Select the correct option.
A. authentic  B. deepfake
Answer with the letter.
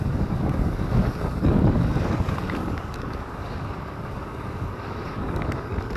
B